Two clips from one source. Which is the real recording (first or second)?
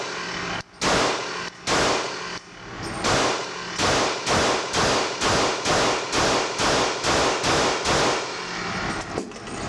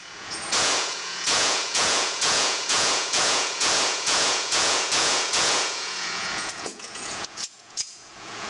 first